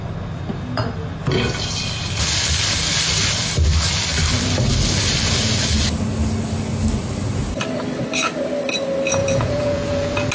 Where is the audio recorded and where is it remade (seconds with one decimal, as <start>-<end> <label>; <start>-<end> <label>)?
0.0-9.2 recorded; 9.2-10.3 remade